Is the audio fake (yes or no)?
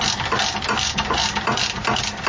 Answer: no